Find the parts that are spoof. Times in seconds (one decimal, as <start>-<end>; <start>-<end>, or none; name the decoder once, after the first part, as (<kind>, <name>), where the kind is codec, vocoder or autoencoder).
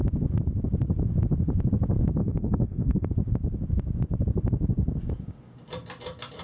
2.2-3.1 (codec, SNAC)